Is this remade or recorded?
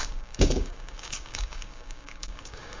remade